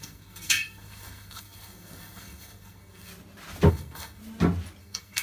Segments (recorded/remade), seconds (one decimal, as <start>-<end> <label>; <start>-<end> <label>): 0.0-3.1 remade; 3.1-3.7 recorded; 3.7-4.2 remade; 4.2-4.8 recorded; 4.8-5.2 remade